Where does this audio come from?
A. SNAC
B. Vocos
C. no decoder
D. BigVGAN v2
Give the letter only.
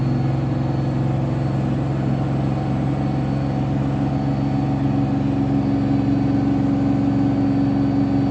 C